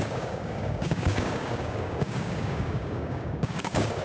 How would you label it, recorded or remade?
remade